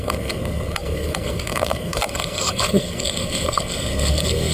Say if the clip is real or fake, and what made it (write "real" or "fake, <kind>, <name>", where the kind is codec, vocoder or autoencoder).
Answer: fake, codec, SNAC